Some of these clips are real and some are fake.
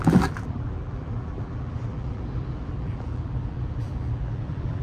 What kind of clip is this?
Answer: fake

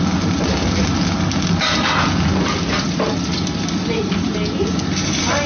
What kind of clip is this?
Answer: real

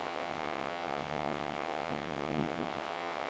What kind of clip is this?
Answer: fake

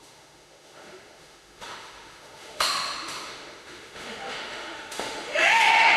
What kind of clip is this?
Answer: fake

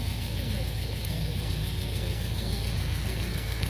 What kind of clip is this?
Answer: fake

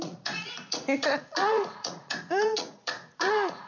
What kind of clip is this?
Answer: fake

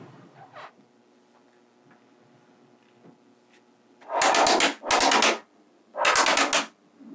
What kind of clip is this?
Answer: real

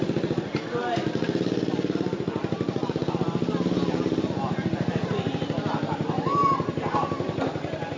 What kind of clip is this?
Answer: real